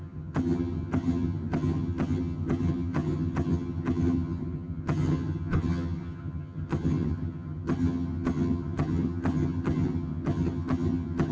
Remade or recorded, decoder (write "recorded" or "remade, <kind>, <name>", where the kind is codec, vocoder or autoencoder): remade, vocoder, HiFi-GAN